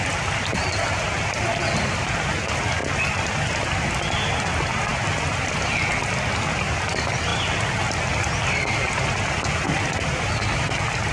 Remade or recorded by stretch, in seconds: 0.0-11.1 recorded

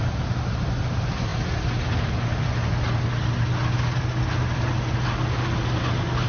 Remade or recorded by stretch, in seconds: 0.0-6.3 recorded

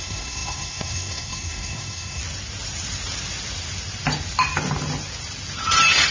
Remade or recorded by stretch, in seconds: 0.0-2.2 remade; 2.2-6.1 recorded